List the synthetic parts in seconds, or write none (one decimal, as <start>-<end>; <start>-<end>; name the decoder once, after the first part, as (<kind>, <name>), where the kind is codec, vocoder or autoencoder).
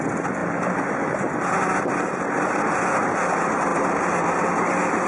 none